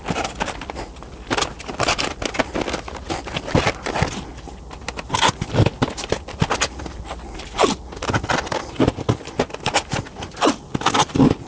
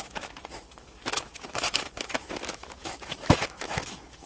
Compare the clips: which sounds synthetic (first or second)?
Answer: second